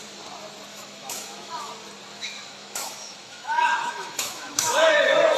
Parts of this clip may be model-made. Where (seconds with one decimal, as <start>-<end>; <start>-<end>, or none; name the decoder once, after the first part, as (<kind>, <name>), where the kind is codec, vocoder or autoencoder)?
0.7-1.7 (autoencoder, DAC-VAE); 2.1-4.9